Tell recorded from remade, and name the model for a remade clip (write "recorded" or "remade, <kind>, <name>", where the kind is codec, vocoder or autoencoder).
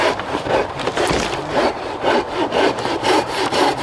remade, vocoder, BigVGAN v2